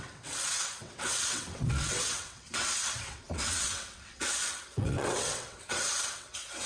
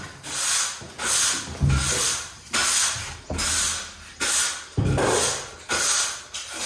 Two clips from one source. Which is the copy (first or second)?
first